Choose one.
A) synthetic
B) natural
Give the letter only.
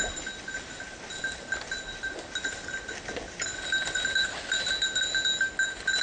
B